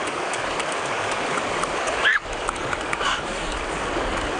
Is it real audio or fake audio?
fake